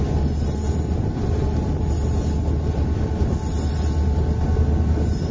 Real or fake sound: real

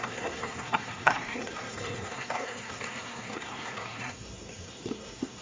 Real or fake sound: fake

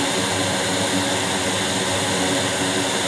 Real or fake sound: real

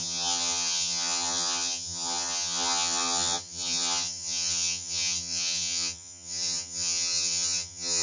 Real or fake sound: fake